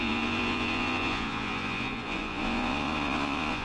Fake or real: fake